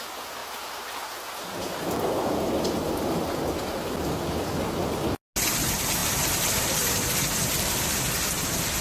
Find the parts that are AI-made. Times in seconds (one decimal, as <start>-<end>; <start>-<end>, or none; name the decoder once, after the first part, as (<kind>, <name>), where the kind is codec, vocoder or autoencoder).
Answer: none